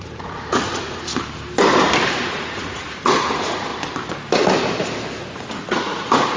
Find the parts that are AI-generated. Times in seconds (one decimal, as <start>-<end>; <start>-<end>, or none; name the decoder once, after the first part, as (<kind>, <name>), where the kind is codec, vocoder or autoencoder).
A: 0.0-1.1 (vocoder, Vocos); 2.1-3.7; 5.2-6.4